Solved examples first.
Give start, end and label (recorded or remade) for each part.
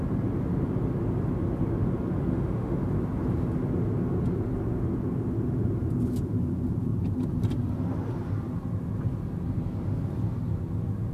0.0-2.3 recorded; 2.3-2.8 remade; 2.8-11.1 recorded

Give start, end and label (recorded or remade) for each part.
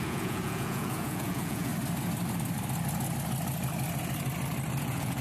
0.0-1.7 remade; 1.7-4.8 recorded; 4.8-5.2 remade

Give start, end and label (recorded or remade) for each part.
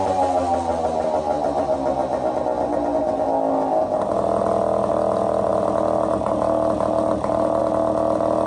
0.0-8.5 recorded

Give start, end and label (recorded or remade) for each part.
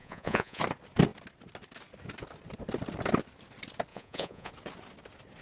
0.0-0.6 remade; 0.6-3.9 recorded; 3.9-4.5 remade; 4.5-5.4 recorded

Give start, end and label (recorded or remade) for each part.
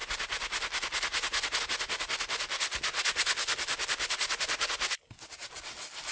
0.0-6.1 recorded